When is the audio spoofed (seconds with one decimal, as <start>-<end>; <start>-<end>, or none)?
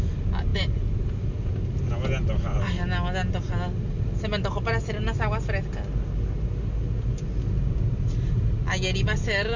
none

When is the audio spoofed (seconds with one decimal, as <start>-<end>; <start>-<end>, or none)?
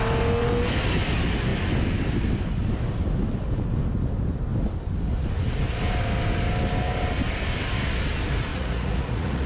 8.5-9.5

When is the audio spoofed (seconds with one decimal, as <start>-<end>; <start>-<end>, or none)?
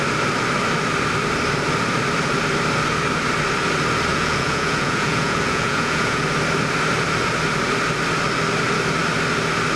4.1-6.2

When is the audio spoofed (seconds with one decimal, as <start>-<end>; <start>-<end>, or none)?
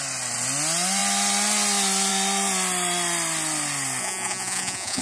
4.0-5.0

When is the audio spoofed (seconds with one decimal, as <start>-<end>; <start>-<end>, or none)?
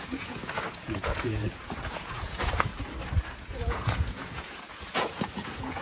0.0-2.7; 3.3-5.8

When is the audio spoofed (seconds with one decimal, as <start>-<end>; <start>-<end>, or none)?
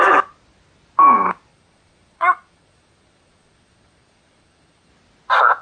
1.5-4.9